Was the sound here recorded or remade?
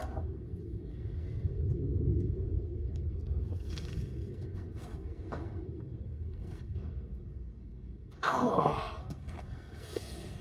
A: remade